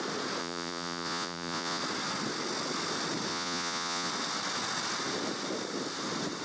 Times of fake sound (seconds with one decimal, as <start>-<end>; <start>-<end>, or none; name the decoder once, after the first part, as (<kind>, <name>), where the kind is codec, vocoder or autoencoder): 0.4-1.8 (vocoder, Vocos); 3.3-4.1